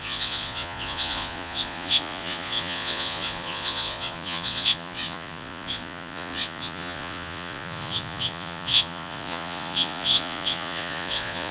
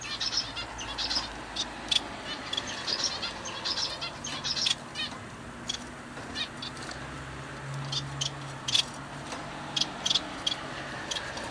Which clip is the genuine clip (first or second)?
second